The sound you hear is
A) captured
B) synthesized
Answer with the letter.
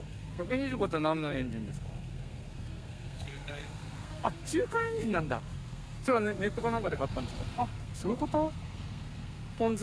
B